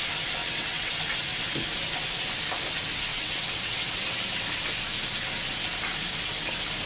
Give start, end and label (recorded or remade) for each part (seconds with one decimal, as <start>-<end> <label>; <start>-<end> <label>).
0.0-0.4 recorded; 0.4-0.9 remade; 0.9-3.1 recorded; 3.1-4.2 remade; 4.2-6.9 recorded